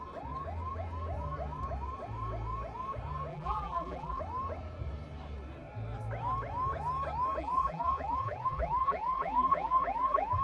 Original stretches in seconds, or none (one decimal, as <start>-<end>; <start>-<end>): 0.0-3.3; 4.2-7.4